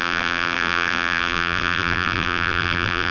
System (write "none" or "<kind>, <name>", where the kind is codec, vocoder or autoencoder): vocoder, BigVGAN v2